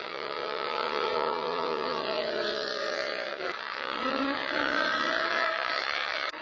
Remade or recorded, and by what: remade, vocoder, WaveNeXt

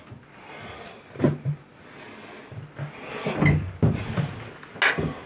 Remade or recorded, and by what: recorded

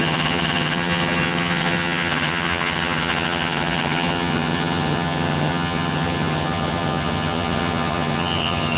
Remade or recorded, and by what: remade, vocoder, HiFi-GAN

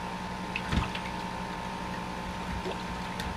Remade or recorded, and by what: recorded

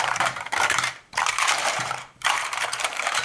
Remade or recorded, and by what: remade, vocoder, BigVGAN v2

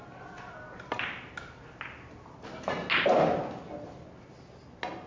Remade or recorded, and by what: recorded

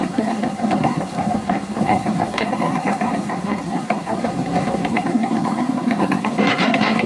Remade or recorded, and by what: remade, codec, SNAC